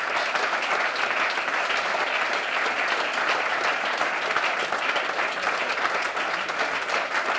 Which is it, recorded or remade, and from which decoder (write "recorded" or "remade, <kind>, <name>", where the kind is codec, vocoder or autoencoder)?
recorded